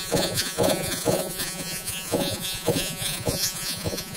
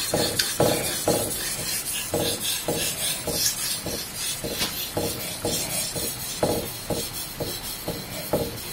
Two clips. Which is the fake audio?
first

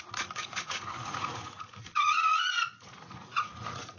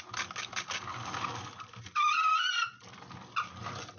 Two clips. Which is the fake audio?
first